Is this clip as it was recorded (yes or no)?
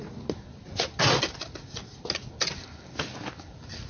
yes